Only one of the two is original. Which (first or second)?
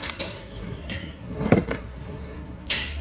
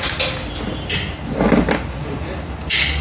second